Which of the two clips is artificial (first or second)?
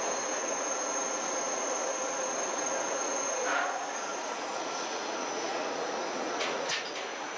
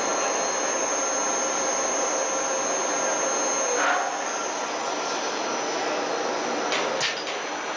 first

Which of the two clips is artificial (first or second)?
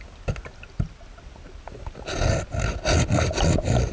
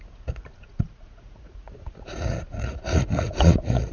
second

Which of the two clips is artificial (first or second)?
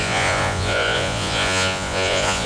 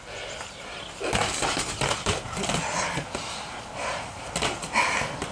first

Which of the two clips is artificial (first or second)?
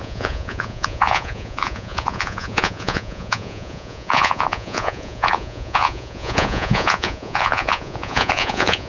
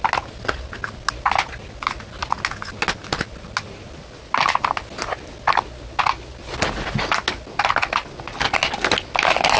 first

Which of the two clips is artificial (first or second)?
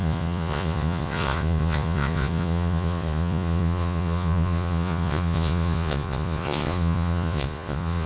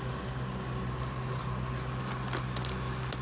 first